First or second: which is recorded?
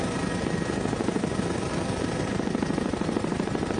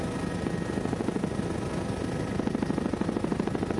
second